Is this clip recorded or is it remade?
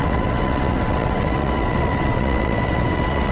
remade